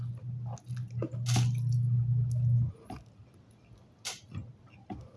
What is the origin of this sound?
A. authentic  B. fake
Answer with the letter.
A